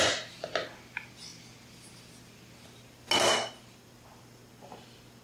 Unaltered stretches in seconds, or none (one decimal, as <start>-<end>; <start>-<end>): 0.0-5.2